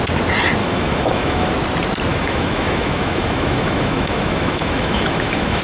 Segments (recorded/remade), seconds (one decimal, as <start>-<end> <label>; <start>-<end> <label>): 0.0-0.6 recorded; 0.6-1.5 remade; 1.5-2.1 recorded; 2.1-5.6 remade